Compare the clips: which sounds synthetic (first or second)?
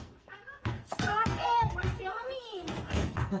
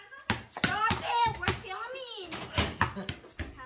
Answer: first